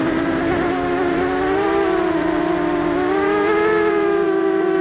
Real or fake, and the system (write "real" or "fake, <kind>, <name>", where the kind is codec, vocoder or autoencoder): fake, vocoder, BigVGAN v2